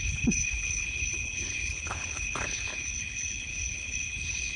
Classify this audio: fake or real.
fake